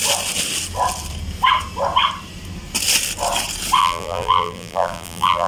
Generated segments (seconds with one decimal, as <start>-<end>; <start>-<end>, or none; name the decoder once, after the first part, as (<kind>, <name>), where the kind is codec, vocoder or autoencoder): 3.8-5.5 (vocoder, BigVGAN v2)